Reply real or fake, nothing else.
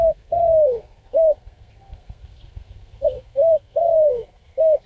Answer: fake